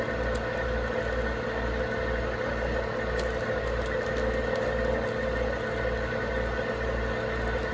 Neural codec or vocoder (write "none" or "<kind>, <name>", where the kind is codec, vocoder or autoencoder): none